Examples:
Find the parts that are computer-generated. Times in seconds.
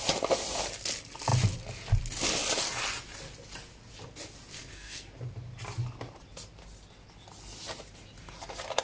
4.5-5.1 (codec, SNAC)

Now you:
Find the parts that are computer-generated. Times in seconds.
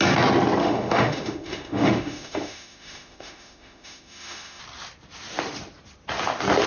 0.6-4.6 (autoencoder, DAC-VAE)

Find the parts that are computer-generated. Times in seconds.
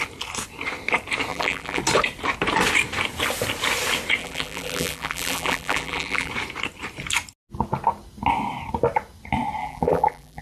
1.3-1.8 (vocoder, BigVGAN v2); 4.2-6.3; 9.6-10.4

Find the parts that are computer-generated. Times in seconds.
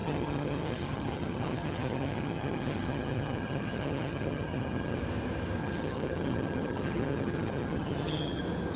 0.0-5.0 (vocoder, HiFi-GAN); 5.6-8.4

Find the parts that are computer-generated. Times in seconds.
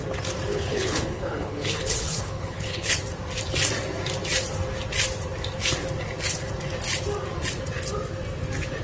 0.5-3.0 (codec, HILCodec)